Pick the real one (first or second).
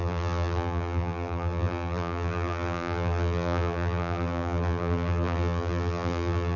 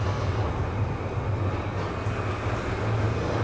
second